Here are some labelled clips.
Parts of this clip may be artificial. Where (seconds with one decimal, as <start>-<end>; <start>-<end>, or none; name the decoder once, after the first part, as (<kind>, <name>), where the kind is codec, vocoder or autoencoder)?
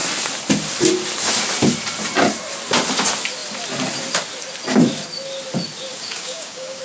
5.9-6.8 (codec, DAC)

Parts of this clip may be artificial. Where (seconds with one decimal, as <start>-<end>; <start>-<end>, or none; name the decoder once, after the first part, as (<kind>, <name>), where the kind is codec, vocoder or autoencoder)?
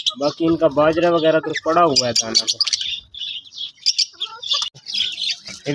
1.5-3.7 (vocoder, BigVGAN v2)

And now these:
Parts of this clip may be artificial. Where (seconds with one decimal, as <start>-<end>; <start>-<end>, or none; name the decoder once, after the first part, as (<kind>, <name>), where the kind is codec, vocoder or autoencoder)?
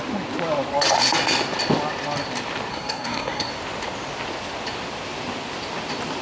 2.7-3.5 (codec, SNAC)